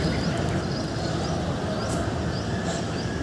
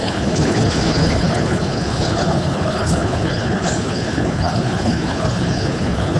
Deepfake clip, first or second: second